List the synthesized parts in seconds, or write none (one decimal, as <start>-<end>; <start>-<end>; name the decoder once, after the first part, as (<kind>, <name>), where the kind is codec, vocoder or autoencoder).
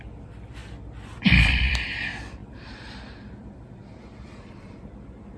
0.0-0.6 (vocoder, BigVGAN v2); 1.4-5.4